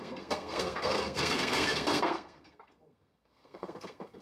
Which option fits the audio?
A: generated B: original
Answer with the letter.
A